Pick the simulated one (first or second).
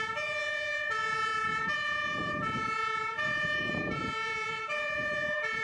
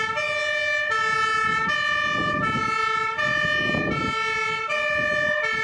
first